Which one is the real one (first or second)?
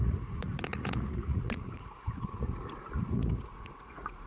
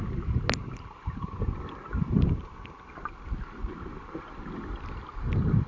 second